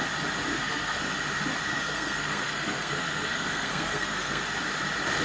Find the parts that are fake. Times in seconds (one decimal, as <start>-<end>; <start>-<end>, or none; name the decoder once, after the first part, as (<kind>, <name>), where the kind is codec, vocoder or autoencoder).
0.5-1.1 (codec, SNAC); 1.7-4.4

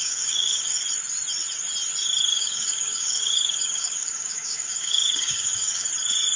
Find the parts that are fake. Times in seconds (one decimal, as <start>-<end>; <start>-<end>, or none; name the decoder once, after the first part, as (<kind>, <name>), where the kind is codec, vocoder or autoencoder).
0.0-0.8 (codec, DAC); 2.3-5.9

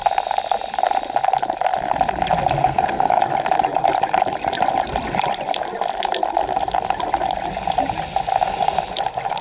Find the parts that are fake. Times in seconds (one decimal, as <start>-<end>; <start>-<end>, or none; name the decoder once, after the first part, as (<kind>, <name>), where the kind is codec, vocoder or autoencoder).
2.6-3.2 (codec, SNAC)

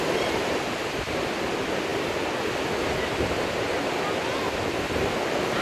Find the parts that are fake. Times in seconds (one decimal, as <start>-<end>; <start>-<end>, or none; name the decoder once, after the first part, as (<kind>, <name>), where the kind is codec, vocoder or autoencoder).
none

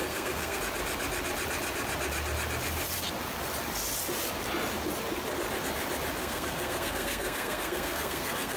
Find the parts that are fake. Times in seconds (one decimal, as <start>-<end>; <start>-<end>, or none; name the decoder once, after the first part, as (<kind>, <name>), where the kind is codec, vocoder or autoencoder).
0.0-0.6 (codec, SNAC); 6.2-8.6

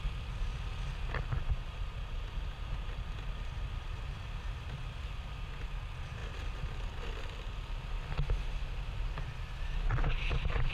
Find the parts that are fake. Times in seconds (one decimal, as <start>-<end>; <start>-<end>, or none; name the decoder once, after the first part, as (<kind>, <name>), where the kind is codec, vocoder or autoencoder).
none